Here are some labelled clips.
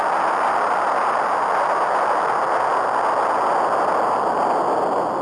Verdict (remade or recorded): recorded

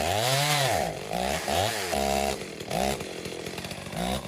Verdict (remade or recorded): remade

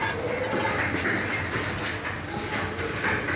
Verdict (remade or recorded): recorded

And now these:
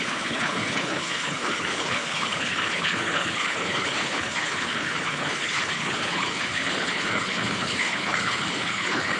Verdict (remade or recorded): remade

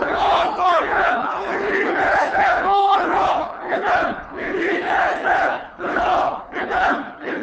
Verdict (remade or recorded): remade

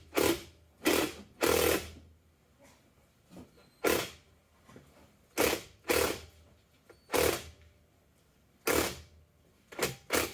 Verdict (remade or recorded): recorded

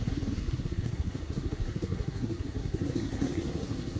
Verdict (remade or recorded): remade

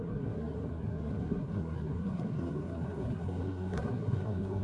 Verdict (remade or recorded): remade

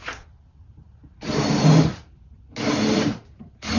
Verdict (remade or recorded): recorded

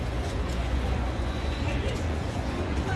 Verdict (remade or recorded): remade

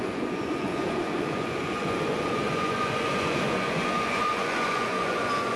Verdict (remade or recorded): remade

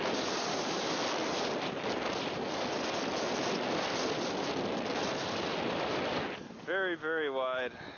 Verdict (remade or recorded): recorded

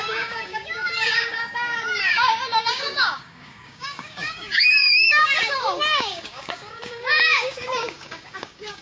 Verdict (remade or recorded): remade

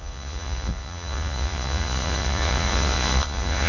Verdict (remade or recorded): remade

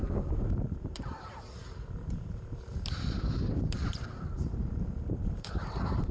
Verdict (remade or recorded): remade